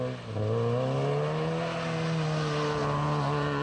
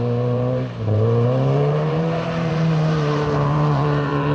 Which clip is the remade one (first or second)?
second